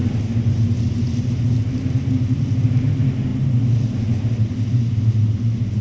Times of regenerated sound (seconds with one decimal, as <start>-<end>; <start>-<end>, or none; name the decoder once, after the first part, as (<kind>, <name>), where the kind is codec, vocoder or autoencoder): none